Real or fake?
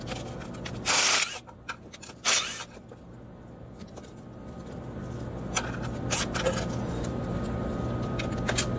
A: real